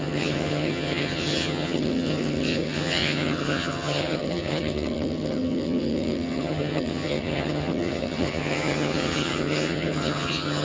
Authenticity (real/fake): fake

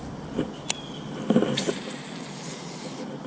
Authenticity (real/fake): real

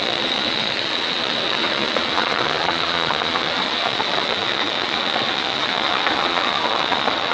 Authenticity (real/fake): fake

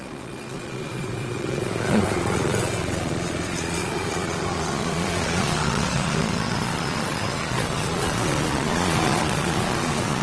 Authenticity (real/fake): fake